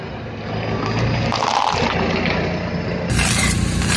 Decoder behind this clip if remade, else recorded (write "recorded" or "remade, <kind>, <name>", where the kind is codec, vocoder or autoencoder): recorded